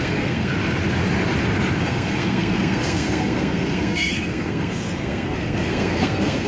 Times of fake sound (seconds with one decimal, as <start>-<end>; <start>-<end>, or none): 0.0-0.5; 1.8-6.5